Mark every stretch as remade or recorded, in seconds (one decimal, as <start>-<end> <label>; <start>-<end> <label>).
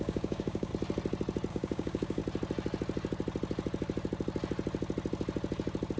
0.0-0.7 remade; 0.7-1.5 recorded; 1.5-2.2 remade; 2.2-6.0 recorded